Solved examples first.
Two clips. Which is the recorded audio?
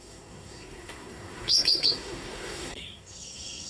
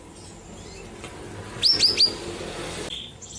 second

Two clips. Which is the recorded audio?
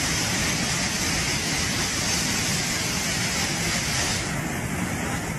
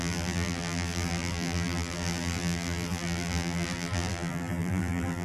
first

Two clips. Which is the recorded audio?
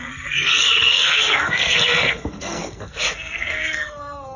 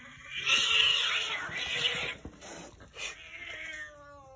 second